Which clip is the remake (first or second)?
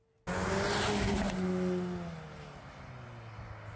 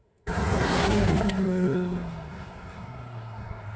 second